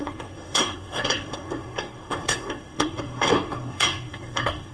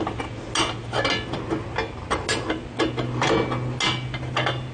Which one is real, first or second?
second